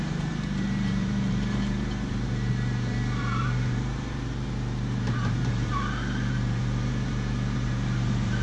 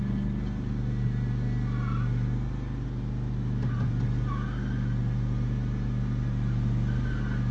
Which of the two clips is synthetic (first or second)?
first